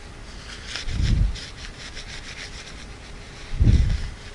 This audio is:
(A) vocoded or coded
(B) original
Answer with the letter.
B